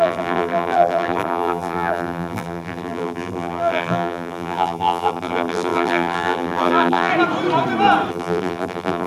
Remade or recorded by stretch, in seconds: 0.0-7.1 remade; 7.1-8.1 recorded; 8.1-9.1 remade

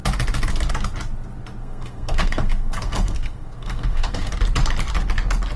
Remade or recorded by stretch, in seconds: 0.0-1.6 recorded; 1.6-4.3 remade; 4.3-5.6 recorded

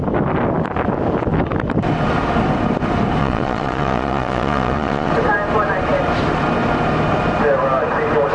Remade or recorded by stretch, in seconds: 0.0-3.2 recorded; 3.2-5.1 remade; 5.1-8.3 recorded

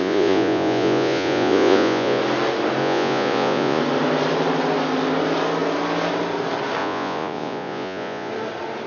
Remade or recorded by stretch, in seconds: 0.0-2.2 remade; 2.2-2.8 recorded; 2.8-3.8 remade; 3.8-6.8 recorded; 6.8-8.3 remade; 8.3-8.9 recorded

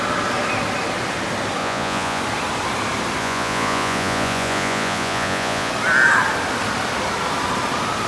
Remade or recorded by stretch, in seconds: 0.0-1.6 recorded; 1.6-2.2 remade; 2.2-3.2 recorded; 3.2-5.7 remade; 5.7-8.1 recorded

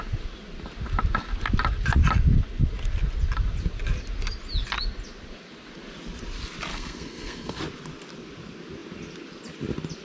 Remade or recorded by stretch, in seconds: 0.0-6.7 recorded; 6.7-7.6 remade; 7.6-10.0 recorded

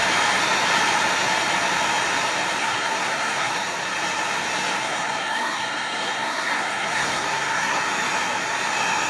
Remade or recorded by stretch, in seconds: 0.0-2.6 recorded; 2.6-3.5 remade; 3.5-4.8 recorded; 4.8-7.8 remade; 7.8-9.1 recorded

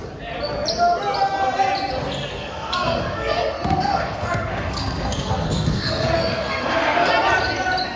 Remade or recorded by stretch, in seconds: 0.0-2.3 recorded; 2.3-7.1 remade; 7.1-8.0 recorded